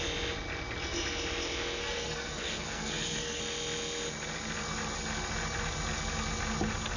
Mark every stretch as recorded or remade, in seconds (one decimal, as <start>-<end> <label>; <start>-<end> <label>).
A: 0.0-1.8 recorded; 1.8-3.4 remade; 3.4-7.0 recorded

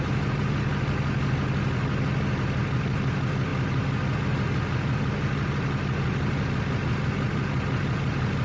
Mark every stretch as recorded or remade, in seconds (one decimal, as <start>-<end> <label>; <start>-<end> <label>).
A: 0.0-8.4 recorded

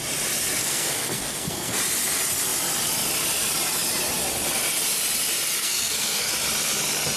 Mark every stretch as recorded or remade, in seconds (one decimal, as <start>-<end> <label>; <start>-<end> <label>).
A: 0.0-0.6 recorded; 0.6-1.8 remade; 1.8-5.6 recorded; 5.6-6.3 remade; 6.3-7.2 recorded

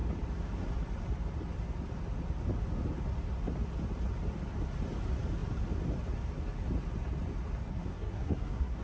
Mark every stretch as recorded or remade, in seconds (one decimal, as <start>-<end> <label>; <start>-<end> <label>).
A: 0.0-7.7 recorded; 7.7-8.8 remade

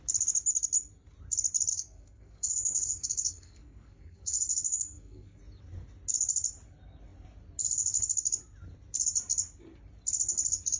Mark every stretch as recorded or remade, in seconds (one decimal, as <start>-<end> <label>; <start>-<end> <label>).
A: 0.0-1.7 recorded; 1.7-5.4 remade; 5.4-10.8 recorded

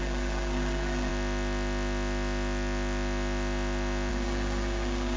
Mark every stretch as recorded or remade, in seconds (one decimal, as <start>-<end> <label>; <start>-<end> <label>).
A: 0.0-1.1 remade; 1.1-4.1 recorded; 4.1-5.2 remade

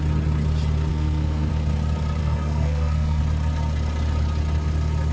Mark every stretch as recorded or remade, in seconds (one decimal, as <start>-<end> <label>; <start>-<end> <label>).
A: 0.0-0.9 recorded; 0.9-1.5 remade; 1.5-2.2 recorded; 2.2-3.2 remade; 3.2-5.1 recorded